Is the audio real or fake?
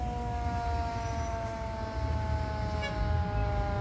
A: real